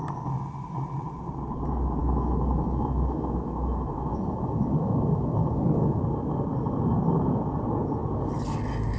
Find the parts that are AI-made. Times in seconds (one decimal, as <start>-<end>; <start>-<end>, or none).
2.0-6.0